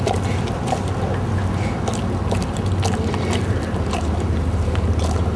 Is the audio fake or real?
real